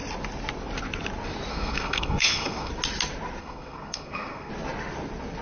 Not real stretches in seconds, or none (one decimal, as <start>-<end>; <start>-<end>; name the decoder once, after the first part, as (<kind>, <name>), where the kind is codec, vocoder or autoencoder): 1.5-2.7 (codec, SNAC); 3.4-4.5